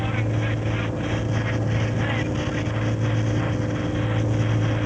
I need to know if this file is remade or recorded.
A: recorded